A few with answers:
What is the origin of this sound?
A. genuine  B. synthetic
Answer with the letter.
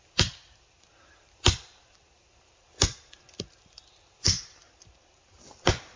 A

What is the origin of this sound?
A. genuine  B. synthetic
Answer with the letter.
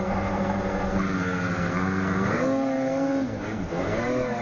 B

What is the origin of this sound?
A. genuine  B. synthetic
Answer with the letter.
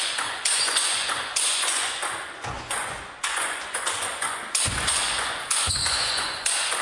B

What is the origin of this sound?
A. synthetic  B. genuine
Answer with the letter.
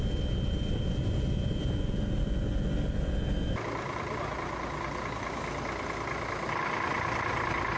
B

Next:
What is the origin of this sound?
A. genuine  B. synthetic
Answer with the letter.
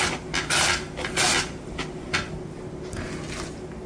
A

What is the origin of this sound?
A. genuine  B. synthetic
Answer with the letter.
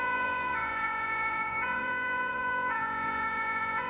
B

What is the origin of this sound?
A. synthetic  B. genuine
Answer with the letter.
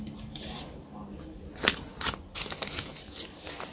B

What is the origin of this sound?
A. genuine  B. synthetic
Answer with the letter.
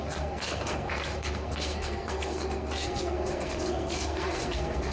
B